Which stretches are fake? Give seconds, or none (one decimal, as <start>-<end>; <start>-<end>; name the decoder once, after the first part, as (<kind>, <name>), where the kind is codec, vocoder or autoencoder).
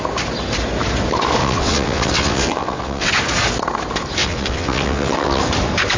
1.4-3.1 (vocoder, WaveNeXt); 4.2-5.4